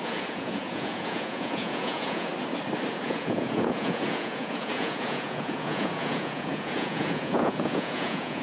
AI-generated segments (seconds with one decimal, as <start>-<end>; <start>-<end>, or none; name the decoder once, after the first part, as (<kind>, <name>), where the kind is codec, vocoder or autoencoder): 0.0-2.3 (vocoder, Vocos); 2.9-8.4